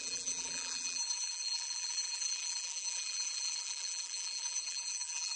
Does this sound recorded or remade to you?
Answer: remade